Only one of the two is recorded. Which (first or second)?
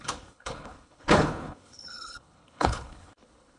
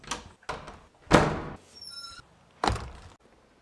second